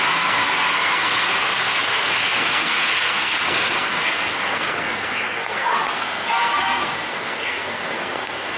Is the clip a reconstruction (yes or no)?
yes